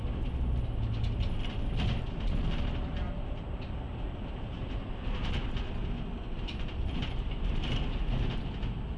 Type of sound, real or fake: real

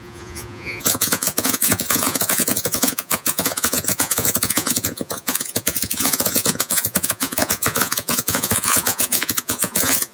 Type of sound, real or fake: fake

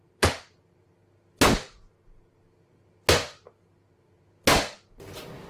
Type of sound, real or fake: real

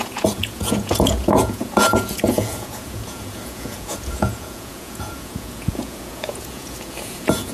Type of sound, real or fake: fake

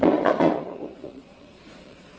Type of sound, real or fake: fake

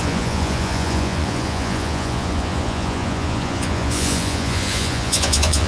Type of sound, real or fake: fake